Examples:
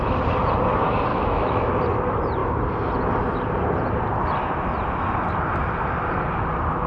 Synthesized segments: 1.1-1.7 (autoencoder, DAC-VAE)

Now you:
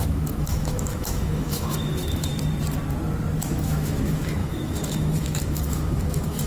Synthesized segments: 0.0-2.3 (autoencoder, DAC-VAE); 3.4-6.5